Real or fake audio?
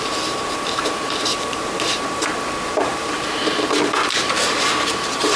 fake